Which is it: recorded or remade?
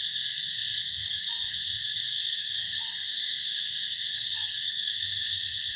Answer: remade